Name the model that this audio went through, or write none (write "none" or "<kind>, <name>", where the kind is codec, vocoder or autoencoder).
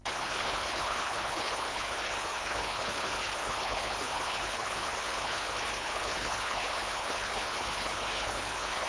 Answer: codec, HILCodec